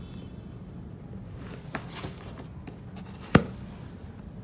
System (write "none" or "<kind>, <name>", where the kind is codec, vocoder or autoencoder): none